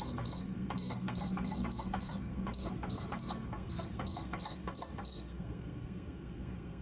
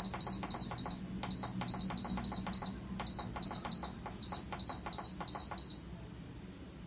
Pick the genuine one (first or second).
second